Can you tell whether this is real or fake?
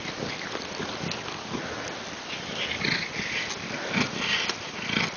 real